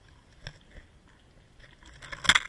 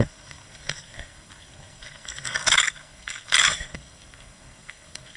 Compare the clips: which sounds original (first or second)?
first